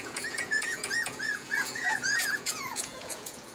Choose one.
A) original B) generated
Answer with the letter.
B